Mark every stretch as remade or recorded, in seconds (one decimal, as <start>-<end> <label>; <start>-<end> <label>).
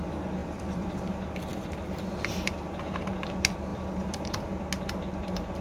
0.0-0.4 recorded; 0.4-1.1 remade; 1.1-3.7 recorded; 3.7-4.5 remade; 4.5-5.6 recorded